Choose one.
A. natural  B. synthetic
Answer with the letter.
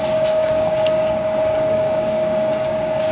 B